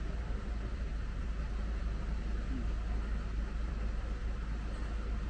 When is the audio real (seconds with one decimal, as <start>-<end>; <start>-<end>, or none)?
0.0-5.3